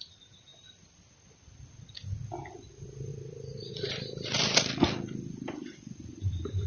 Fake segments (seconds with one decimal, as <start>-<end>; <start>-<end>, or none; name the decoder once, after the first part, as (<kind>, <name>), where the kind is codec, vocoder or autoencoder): none